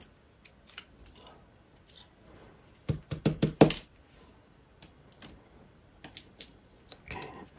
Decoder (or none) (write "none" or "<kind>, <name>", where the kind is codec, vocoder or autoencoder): none